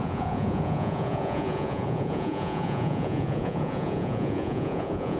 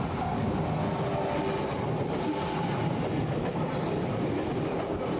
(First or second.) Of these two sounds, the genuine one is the second